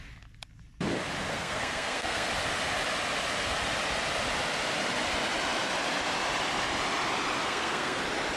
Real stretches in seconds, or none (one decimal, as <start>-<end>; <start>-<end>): 0.0-1.3; 2.3-7.4; 8.0-8.4